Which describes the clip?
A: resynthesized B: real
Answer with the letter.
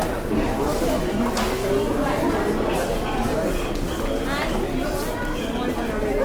B